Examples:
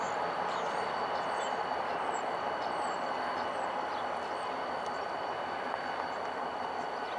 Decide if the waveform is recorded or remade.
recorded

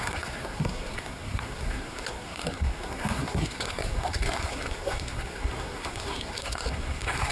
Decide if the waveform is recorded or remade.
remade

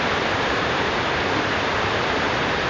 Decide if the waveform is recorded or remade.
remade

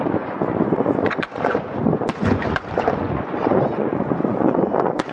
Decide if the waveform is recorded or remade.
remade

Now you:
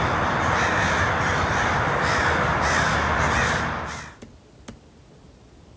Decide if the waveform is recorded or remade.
recorded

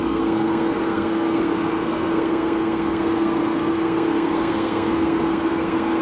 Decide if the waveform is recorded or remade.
remade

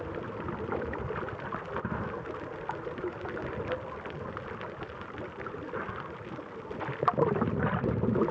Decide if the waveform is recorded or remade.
recorded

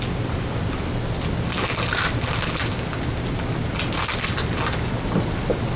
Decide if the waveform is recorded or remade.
recorded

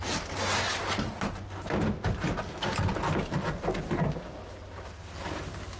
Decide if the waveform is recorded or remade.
recorded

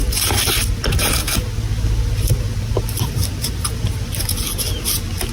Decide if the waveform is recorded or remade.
recorded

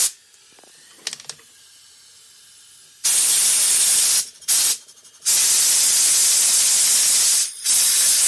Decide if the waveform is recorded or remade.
recorded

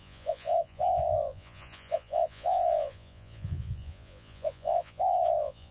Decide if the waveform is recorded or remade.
remade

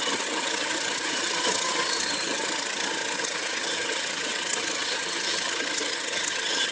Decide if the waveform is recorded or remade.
remade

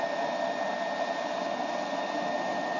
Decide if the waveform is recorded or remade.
recorded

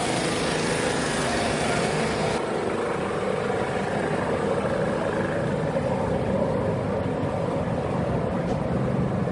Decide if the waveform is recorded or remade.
recorded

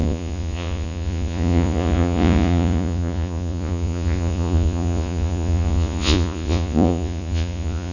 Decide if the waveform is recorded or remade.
remade